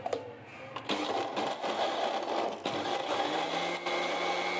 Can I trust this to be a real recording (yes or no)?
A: yes